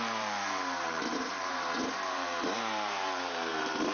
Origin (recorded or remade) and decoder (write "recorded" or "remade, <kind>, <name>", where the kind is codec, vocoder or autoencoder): remade, vocoder, BigVGAN v2